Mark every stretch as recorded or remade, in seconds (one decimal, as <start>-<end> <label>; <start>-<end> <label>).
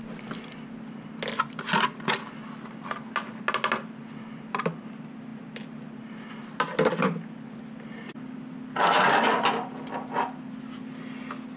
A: 0.0-11.6 recorded